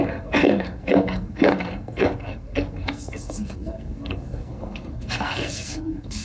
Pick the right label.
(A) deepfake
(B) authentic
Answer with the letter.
A